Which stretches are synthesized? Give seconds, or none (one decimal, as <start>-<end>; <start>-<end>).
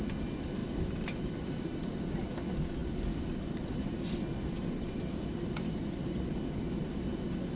none